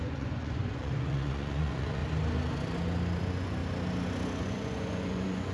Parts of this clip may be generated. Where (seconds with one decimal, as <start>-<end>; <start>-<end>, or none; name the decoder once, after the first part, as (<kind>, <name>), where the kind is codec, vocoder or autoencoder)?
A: 0.0-2.0 (vocoder, Vocos); 3.2-3.6; 4.4-5.5